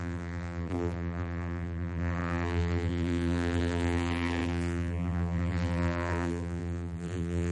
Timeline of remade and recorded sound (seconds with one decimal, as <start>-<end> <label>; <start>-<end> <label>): 0.0-7.5 remade